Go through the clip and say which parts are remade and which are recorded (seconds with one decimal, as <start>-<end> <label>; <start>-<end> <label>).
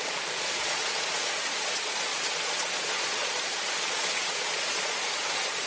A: 0.0-5.7 remade